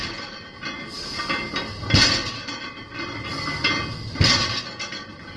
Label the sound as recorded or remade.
recorded